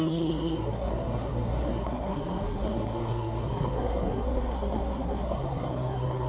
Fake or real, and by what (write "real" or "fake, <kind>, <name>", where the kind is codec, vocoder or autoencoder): fake, codec, SNAC